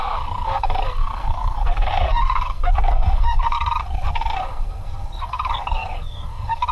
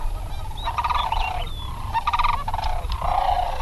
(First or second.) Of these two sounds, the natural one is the second